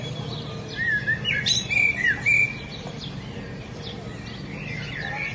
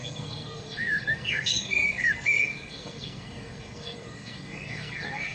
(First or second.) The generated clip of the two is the second